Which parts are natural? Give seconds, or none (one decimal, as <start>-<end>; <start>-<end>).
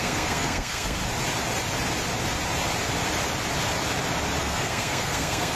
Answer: 1.0-4.4